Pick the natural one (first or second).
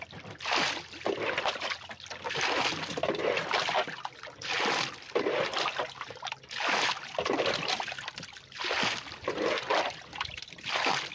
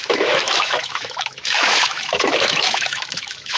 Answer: first